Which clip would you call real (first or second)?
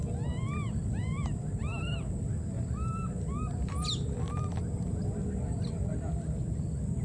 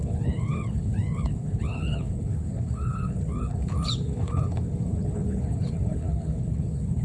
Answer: first